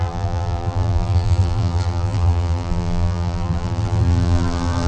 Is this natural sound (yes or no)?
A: no